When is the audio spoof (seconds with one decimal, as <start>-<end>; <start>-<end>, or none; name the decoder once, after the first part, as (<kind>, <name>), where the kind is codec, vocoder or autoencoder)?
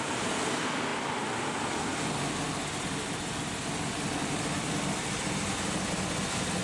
none